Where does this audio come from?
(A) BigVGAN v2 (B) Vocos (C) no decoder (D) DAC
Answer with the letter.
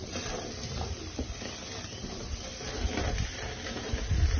C